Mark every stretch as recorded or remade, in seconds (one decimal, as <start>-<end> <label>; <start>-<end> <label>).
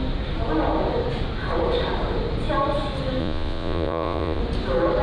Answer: 0.0-3.2 recorded; 3.2-4.4 remade; 4.4-5.0 recorded